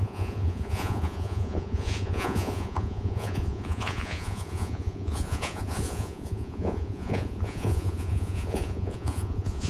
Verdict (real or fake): fake